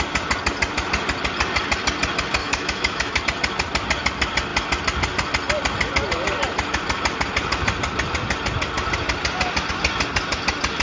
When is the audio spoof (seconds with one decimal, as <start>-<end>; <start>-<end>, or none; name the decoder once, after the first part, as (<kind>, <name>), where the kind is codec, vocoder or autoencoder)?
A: 2.4-3.2 (autoencoder, DAC-VAE)